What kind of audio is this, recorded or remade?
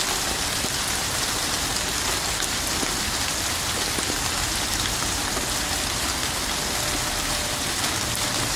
recorded